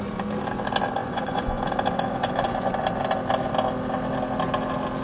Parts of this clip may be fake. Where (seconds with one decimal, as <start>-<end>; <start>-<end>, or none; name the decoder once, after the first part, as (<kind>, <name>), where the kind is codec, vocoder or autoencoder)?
1.0-1.6 (vocoder, Vocos); 2.2-2.9